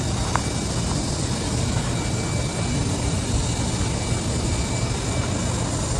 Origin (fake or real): real